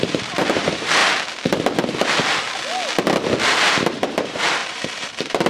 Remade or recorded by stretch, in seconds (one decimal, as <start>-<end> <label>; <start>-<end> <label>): 0.0-1.0 remade; 1.0-3.7 recorded; 3.7-5.5 remade